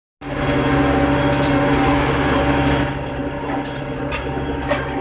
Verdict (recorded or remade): recorded